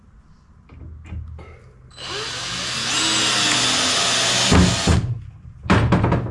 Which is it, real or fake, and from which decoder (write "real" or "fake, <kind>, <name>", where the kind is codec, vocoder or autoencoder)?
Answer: real